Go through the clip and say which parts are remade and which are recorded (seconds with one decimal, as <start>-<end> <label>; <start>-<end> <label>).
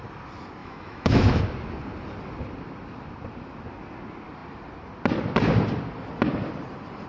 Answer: 0.0-0.6 recorded; 0.6-1.4 remade; 1.4-7.1 recorded